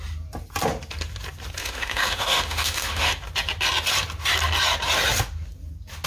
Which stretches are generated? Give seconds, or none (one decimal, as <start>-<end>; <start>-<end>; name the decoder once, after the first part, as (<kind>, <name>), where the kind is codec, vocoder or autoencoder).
1.6-3.1 (autoencoder, DAC-VAE)